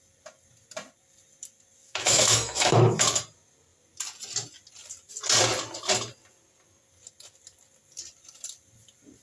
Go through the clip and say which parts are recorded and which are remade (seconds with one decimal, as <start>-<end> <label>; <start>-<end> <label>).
0.0-1.8 recorded; 1.8-3.0 remade; 3.0-9.2 recorded